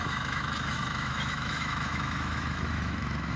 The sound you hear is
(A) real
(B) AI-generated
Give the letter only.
B